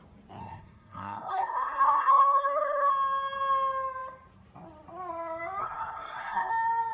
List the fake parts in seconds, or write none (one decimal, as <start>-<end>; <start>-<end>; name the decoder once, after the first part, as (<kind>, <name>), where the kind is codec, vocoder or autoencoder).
0.4-2.9 (codec, SNAC); 5.6-6.5